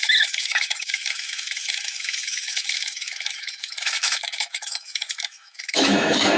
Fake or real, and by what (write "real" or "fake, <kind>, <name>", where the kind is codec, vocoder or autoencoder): fake, autoencoder, DAC-VAE